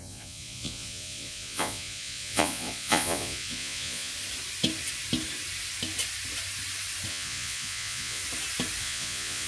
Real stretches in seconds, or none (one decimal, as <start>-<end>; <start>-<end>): 4.1-7.1; 8.2-8.8